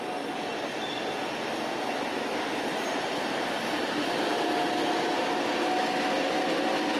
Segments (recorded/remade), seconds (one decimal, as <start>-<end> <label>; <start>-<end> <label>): 0.0-7.0 recorded